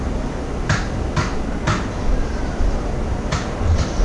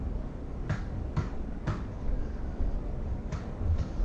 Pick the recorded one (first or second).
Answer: first